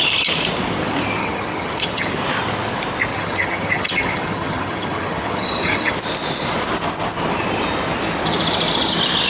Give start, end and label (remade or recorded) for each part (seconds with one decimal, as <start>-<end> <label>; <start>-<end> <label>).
0.0-1.2 recorded; 1.2-2.1 remade; 2.1-3.1 recorded; 3.1-5.9 remade; 5.9-9.3 recorded